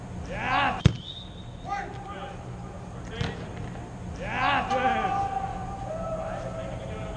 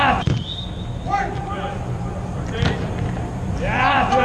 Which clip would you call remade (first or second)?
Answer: second